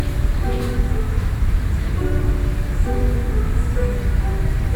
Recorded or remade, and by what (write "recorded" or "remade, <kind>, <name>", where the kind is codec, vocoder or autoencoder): remade, vocoder, BigVGAN v2